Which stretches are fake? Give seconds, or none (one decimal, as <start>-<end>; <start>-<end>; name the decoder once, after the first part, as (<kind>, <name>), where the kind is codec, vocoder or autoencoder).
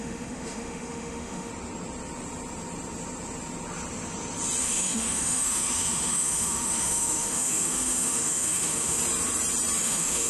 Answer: 0.0-1.5 (autoencoder, DAC-VAE); 4.6-9.0; 9.8-10.3